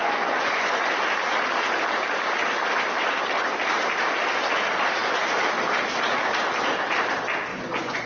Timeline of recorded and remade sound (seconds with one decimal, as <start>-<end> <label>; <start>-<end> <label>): 0.0-0.8 remade; 0.8-7.5 recorded; 7.5-8.1 remade